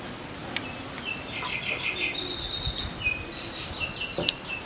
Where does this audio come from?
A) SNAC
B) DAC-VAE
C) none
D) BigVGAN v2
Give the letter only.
C